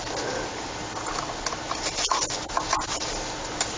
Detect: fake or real real